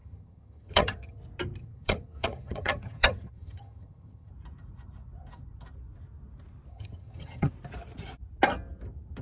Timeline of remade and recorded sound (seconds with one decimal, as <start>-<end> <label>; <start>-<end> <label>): 0.0-1.2 remade; 1.2-1.6 recorded; 1.6-4.3 remade; 4.3-6.7 recorded; 6.7-7.5 remade; 7.5-9.2 recorded

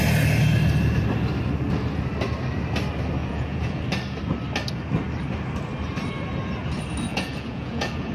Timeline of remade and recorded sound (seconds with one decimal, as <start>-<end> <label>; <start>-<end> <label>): 0.0-3.2 recorded; 3.2-3.8 remade; 3.8-7.1 recorded; 7.1-8.1 remade

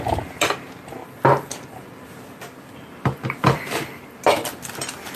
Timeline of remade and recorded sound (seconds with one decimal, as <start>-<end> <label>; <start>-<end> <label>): 0.0-5.2 recorded

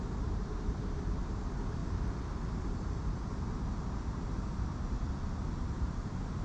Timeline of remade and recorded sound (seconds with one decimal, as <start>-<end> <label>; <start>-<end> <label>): 0.0-1.8 remade; 1.8-2.4 recorded; 2.4-5.0 remade; 5.0-5.6 recorded; 5.6-6.4 remade

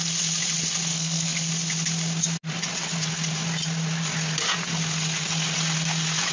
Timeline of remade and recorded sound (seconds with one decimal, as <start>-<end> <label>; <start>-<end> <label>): 0.0-0.9 recorded; 0.9-1.5 remade; 1.5-6.3 recorded

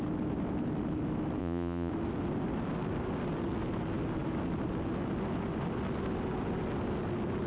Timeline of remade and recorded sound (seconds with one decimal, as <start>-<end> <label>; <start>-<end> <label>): 0.0-1.4 recorded; 1.4-1.9 remade; 1.9-7.5 recorded

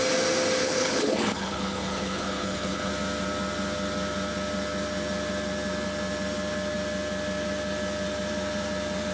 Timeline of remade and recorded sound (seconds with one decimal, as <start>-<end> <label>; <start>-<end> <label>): 0.0-0.6 recorded; 0.6-2.9 remade; 2.9-9.1 recorded